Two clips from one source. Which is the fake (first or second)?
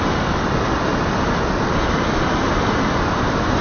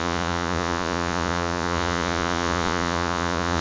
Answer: second